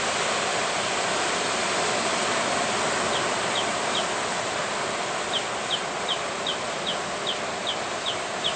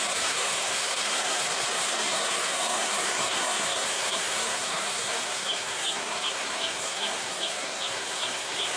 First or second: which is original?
first